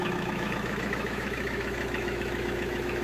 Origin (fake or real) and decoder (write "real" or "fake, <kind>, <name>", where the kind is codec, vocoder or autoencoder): fake, autoencoder, DAC-VAE